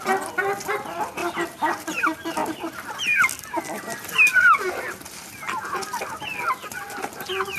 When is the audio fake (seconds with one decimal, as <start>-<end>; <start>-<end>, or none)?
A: none